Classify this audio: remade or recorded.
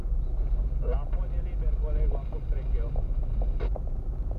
recorded